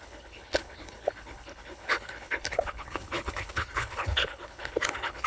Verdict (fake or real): fake